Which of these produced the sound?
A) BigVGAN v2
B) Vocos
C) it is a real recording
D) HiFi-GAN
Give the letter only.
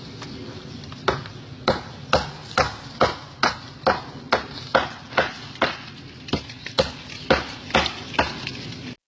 C